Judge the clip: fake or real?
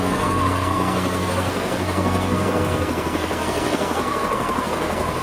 fake